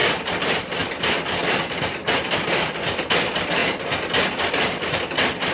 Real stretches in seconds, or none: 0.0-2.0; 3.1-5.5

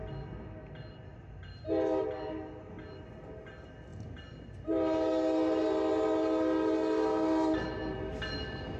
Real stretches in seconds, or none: 0.0-8.8